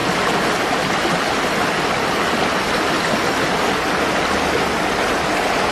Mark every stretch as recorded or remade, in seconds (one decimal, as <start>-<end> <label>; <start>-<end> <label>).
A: 0.0-5.7 recorded